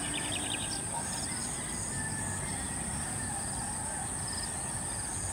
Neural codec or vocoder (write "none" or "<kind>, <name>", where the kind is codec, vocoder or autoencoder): none